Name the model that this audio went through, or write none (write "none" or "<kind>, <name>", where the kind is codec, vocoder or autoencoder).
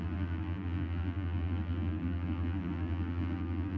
vocoder, BigVGAN v2